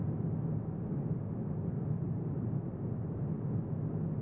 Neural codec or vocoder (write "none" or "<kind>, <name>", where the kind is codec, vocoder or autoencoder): none